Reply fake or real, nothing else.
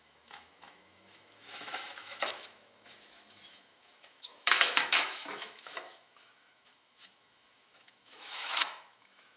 fake